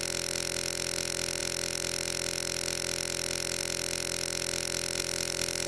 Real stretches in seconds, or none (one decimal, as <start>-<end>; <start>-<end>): 0.0-5.0